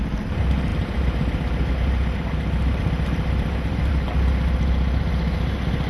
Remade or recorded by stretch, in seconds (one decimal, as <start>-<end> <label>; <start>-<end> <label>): 0.0-5.9 recorded